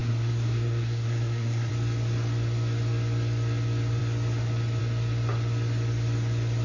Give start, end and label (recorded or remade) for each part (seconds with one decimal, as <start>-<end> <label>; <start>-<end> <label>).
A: 0.0-1.7 remade; 1.7-6.6 recorded